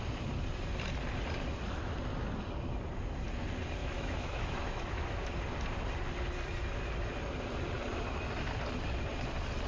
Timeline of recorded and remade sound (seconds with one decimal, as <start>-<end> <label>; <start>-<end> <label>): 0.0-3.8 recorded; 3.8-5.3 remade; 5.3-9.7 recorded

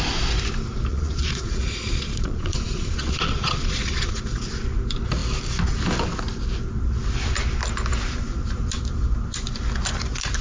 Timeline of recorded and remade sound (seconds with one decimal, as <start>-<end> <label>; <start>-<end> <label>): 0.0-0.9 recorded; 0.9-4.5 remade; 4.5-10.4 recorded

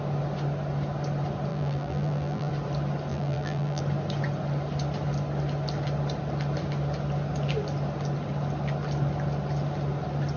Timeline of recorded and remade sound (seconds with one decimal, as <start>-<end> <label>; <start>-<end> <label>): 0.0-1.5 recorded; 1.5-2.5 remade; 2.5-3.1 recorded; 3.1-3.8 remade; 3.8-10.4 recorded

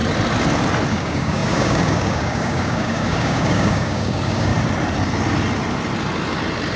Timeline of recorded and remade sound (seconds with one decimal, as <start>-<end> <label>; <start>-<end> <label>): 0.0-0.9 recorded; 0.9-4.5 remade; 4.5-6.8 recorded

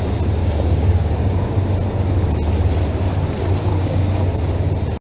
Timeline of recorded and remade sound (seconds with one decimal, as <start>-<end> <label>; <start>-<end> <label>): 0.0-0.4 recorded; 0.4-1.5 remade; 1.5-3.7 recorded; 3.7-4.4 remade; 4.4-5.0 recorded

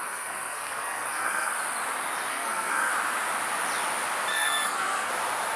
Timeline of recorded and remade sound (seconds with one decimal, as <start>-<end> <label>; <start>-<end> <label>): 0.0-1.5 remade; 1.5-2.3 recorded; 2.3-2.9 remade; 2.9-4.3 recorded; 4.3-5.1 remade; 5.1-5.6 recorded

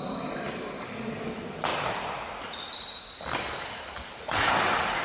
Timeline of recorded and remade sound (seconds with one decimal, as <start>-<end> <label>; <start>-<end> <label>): 0.0-5.0 recorded